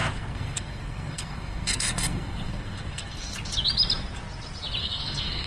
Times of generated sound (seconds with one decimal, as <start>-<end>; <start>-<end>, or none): 0.0-3.3; 4.8-5.5